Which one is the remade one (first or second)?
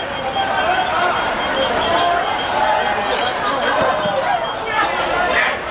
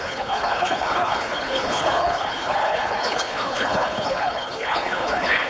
second